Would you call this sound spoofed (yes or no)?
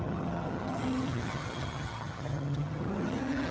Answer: yes